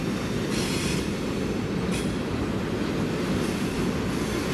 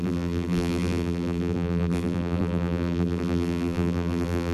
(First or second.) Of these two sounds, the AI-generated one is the second